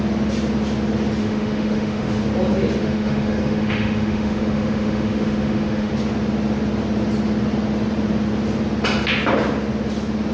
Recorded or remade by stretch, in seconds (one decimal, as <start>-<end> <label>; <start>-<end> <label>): 0.0-1.2 recorded; 1.2-2.2 remade; 2.2-2.8 recorded; 2.8-5.9 remade; 5.9-10.3 recorded

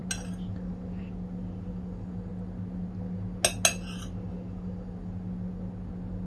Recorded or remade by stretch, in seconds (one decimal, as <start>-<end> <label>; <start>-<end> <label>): 0.0-6.3 recorded

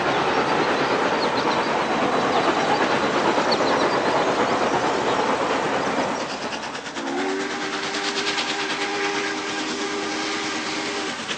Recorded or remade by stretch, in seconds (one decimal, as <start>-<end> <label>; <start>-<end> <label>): 0.0-11.4 recorded

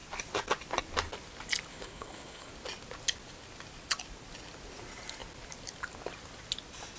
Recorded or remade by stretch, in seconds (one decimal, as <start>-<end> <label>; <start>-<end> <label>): 0.0-1.7 recorded; 1.7-2.5 remade; 2.5-7.0 recorded

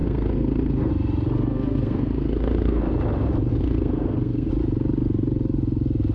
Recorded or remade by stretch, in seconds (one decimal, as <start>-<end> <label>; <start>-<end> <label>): 0.0-0.9 remade; 0.9-1.5 recorded; 1.5-2.8 remade; 2.8-3.5 recorded; 3.5-4.5 remade; 4.5-6.1 recorded

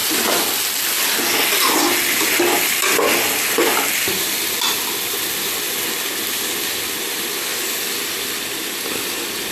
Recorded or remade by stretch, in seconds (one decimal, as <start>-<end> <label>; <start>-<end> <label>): 0.0-9.5 recorded

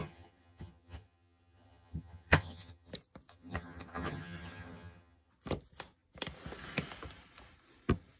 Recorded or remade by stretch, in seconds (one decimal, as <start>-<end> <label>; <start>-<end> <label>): 0.0-2.9 remade; 2.9-3.3 recorded; 3.3-5.3 remade; 5.3-8.2 recorded